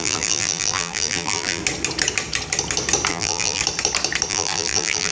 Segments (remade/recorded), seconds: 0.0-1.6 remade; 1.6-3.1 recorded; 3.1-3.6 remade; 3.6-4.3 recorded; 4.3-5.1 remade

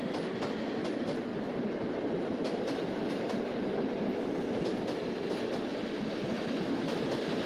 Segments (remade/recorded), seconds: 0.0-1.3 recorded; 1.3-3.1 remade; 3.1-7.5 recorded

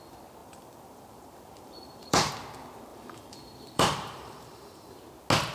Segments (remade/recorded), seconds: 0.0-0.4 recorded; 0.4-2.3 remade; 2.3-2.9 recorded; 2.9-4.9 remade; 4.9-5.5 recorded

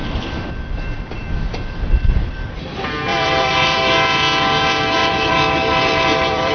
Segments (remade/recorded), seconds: 0.0-2.7 remade; 2.7-3.1 recorded; 3.1-3.8 remade; 3.8-5.0 recorded; 5.0-6.5 remade